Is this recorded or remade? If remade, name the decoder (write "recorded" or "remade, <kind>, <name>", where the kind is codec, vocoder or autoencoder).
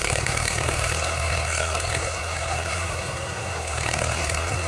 remade, codec, SNAC